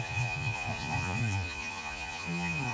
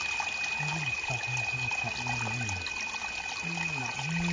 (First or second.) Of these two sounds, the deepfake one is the first